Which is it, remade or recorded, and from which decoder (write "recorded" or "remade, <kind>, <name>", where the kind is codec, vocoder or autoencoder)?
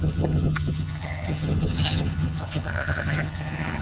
remade, vocoder, HiFi-GAN